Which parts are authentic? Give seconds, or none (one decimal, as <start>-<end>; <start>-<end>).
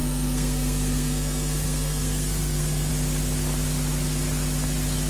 2.9-5.1